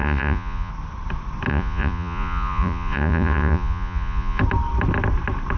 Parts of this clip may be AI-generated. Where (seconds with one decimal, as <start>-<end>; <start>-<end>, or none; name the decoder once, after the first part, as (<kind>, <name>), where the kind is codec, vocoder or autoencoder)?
0.0-0.7 (vocoder, Vocos); 1.5-4.4